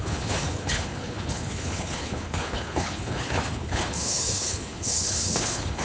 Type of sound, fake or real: fake